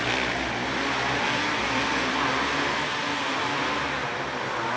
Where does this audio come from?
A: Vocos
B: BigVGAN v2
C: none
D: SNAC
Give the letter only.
C